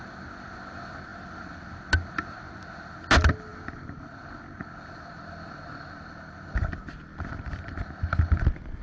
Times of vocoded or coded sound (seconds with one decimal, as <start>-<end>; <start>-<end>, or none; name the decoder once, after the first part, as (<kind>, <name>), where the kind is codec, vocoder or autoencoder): none